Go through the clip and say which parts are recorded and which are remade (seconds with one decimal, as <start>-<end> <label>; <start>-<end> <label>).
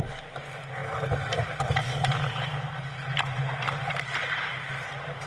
0.0-5.3 recorded